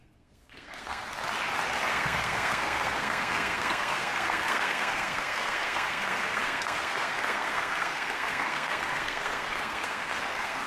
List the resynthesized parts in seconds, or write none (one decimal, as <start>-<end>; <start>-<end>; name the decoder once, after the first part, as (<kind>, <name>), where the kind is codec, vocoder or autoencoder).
0.0-1.0 (codec, SNAC); 1.9-10.7